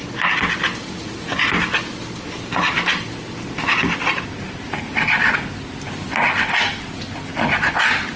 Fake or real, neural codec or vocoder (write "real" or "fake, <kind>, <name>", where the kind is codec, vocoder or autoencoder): real